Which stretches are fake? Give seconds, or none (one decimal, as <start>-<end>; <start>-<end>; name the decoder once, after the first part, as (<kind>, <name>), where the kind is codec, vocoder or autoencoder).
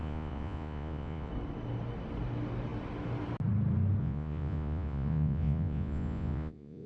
0.0-1.3 (vocoder, Vocos); 4.0-6.9